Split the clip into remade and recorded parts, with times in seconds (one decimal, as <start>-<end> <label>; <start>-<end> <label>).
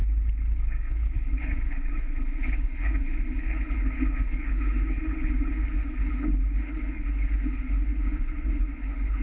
0.0-9.2 remade